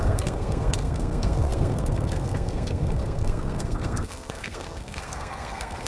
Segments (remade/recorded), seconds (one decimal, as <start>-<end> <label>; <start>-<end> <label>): 0.0-5.9 remade